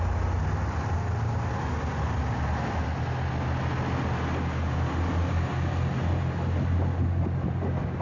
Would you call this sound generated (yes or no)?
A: no